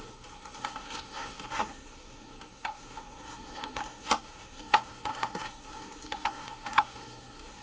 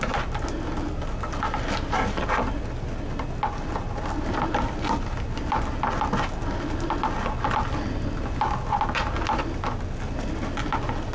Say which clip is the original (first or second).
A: second